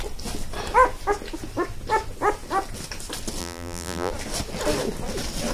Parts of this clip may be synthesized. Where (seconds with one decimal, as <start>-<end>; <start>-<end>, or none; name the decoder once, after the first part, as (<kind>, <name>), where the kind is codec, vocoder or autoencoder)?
3.4-4.1 (vocoder, BigVGAN v2)